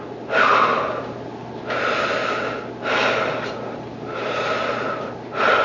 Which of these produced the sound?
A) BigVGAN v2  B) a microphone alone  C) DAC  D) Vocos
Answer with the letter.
B